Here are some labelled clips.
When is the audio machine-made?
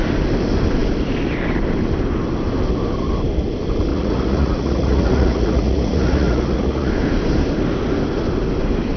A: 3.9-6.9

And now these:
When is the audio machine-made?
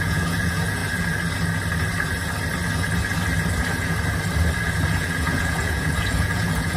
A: 0.0-0.8; 4.9-6.8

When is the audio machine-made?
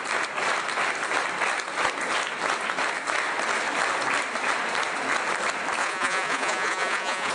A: 5.8-7.3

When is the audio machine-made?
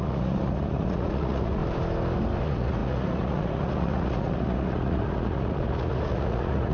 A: 0.0-1.6; 2.4-6.7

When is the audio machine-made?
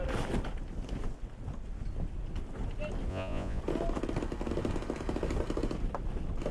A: 3.1-3.6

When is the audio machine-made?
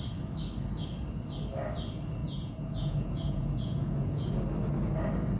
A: 2.2-4.3